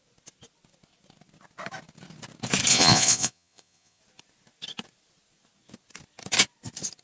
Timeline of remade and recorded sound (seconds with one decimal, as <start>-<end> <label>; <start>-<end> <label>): 0.0-2.7 recorded; 2.7-4.0 remade; 4.0-7.0 recorded